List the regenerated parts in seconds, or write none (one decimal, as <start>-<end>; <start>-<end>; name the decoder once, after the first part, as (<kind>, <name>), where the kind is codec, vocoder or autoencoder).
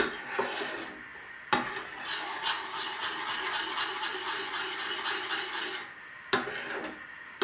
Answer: none